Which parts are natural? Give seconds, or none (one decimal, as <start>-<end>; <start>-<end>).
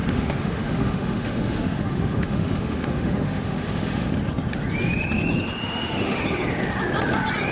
4.1-5.6; 6.2-7.5